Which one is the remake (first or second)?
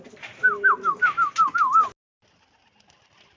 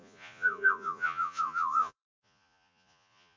second